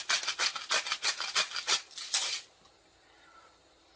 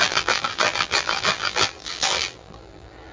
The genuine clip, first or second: first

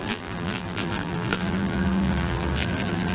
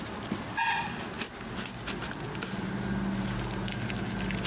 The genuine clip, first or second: second